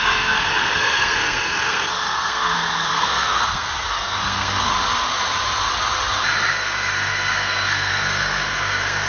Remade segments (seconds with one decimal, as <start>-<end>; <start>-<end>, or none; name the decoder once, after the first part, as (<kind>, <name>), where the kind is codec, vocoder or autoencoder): 0.0-4.7 (codec, SNAC); 6.5-9.1